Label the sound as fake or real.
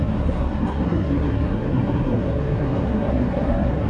fake